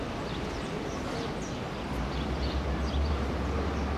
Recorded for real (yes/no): yes